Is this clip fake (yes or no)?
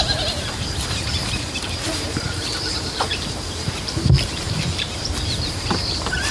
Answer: yes